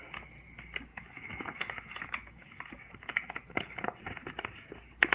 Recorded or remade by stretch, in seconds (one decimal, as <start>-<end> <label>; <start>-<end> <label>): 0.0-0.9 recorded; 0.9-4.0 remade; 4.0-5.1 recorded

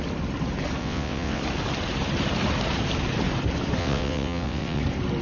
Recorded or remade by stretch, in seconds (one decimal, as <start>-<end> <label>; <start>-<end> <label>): 0.0-0.8 recorded; 0.8-1.4 remade; 1.4-3.8 recorded; 3.8-4.8 remade; 4.8-5.2 recorded

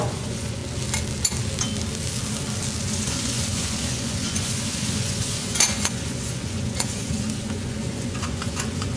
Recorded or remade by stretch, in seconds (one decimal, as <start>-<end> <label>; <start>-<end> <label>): 0.0-0.6 remade; 0.6-2.8 recorded; 2.8-9.0 remade

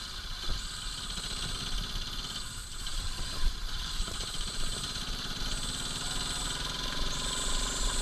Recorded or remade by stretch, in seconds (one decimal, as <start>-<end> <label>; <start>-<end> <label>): 0.0-2.6 recorded; 2.6-5.4 remade; 5.4-8.0 recorded

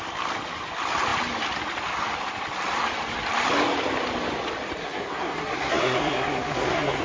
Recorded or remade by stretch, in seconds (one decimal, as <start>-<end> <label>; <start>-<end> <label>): 0.0-4.8 recorded; 4.8-7.0 remade

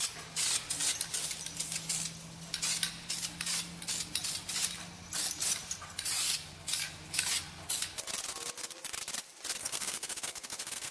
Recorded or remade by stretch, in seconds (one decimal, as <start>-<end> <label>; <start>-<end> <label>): 0.0-9.6 recorded; 9.6-10.9 remade

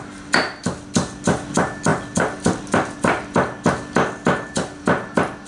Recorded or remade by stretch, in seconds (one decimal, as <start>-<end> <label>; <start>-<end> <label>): 0.0-5.5 recorded